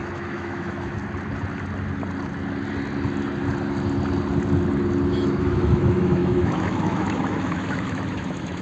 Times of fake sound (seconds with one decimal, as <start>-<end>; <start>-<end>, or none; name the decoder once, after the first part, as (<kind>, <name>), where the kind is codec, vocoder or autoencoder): 0.0-1.0 (autoencoder, DAC-VAE); 5.1-8.6